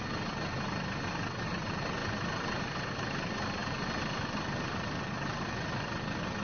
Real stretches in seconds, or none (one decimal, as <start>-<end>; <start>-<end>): 0.0-6.4